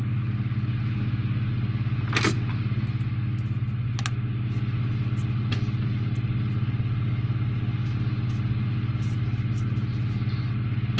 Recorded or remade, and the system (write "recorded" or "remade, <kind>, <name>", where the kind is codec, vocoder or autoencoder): recorded